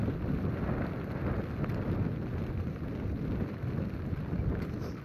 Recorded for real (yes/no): yes